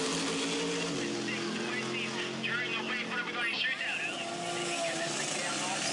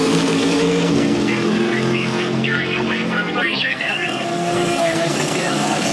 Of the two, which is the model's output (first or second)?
second